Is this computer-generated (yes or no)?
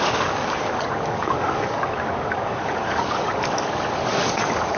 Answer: yes